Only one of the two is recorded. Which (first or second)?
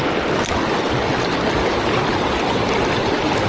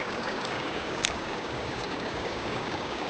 first